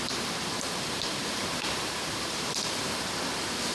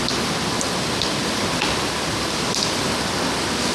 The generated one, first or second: first